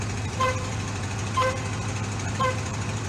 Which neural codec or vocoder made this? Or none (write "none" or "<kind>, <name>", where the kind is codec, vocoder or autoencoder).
vocoder, BigVGAN v2